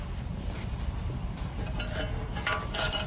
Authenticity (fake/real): fake